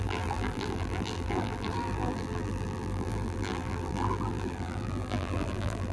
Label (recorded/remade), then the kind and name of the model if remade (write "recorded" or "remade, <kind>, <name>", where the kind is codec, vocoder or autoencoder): remade, vocoder, BigVGAN v2